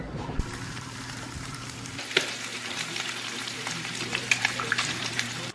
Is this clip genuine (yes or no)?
no